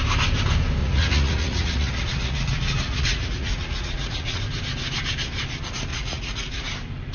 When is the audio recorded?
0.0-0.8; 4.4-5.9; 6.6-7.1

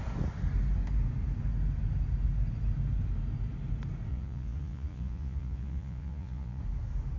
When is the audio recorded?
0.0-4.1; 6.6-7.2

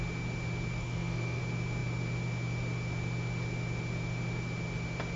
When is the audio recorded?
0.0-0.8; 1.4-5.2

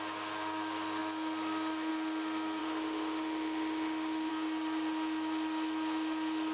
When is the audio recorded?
0.0-2.6; 4.3-6.5

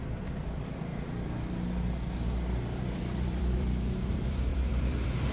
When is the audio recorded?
0.9-2.8